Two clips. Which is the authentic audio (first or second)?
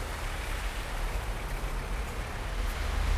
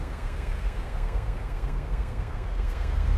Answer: first